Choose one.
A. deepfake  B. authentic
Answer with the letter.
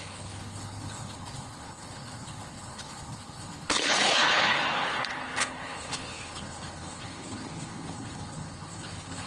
A